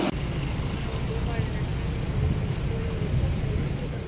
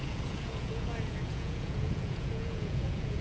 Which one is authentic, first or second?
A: first